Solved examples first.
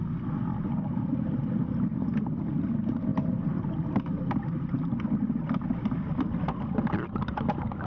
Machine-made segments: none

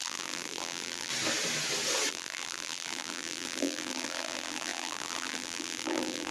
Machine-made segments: 0.0-1.1; 2.1-6.3

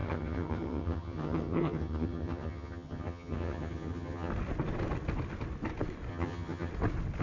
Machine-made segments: 0.0-4.3; 6.1-6.7

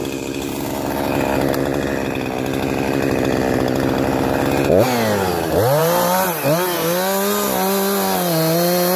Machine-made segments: 5.8-6.3

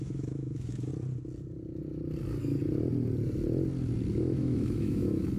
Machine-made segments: 0.0-0.9; 4.1-5.4

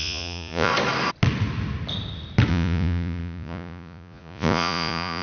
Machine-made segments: 0.0-0.7; 2.5-5.2

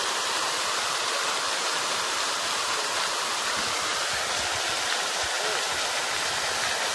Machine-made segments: none

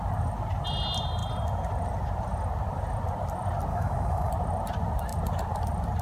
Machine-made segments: 3.7-4.3